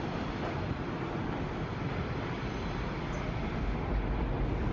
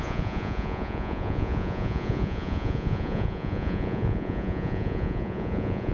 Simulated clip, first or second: second